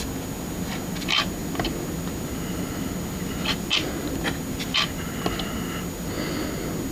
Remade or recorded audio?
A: recorded